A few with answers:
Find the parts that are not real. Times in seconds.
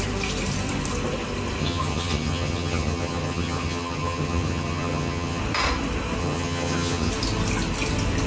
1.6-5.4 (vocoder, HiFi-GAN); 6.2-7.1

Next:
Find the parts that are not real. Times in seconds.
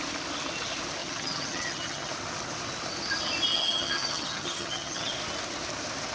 1.0-2.1 (vocoder, HiFi-GAN); 3.5-5.1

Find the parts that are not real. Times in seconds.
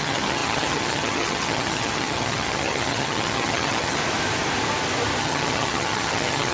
0.0-4.0 (vocoder, HiFi-GAN); 5.2-6.5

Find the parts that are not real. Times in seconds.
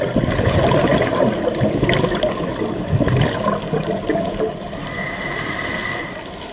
none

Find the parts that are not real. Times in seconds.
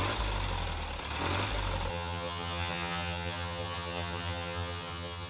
1.9-5.3 (vocoder, HiFi-GAN)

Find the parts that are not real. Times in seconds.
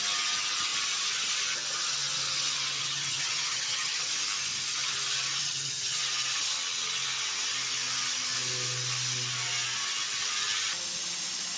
2.8-4.1 (vocoder, HiFi-GAN); 5.4-6.0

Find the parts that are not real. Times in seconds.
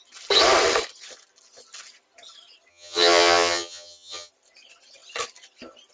2.7-4.3 (vocoder, HiFi-GAN)